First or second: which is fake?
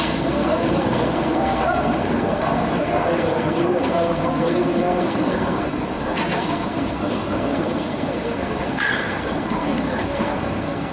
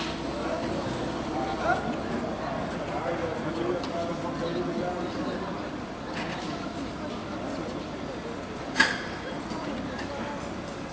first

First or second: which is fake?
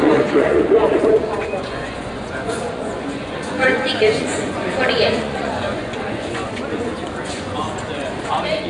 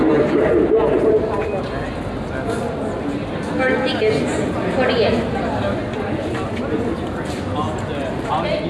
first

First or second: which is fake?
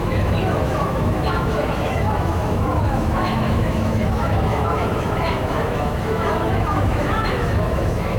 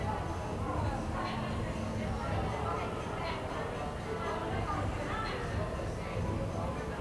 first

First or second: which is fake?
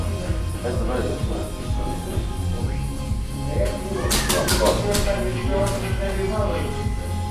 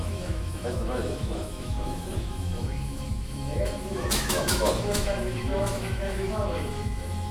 second